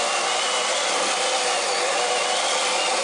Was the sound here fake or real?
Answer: real